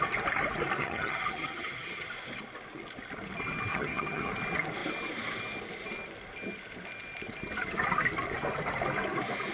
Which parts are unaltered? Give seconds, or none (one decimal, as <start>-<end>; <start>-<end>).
0.0-0.8; 2.1-3.7; 4.3-9.5